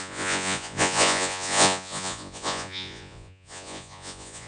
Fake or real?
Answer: fake